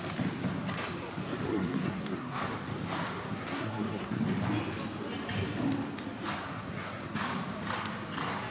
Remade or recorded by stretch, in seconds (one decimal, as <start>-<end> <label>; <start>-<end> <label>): 0.0-1.5 recorded; 1.5-2.5 remade; 2.5-3.2 recorded; 3.2-4.2 remade; 4.2-6.4 recorded; 6.4-7.2 remade; 7.2-8.5 recorded